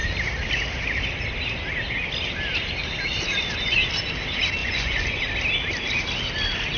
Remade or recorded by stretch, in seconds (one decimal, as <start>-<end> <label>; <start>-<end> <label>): 0.0-4.6 recorded; 4.6-5.2 remade; 5.2-6.8 recorded